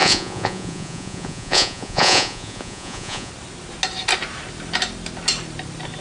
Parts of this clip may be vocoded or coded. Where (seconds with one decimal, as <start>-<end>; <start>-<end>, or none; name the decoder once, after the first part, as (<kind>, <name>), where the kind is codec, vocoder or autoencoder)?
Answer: 0.0-3.3 (vocoder, Vocos)